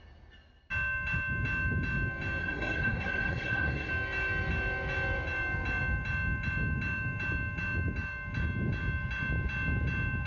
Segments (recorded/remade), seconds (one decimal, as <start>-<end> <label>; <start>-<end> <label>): 0.0-2.4 recorded; 2.4-3.9 remade; 3.9-10.3 recorded